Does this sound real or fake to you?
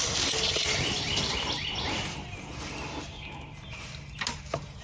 real